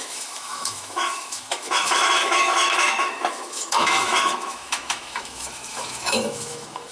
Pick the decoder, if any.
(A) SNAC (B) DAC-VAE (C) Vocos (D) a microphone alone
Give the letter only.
B